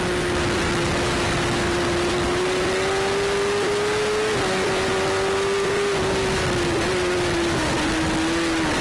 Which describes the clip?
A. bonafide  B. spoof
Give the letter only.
A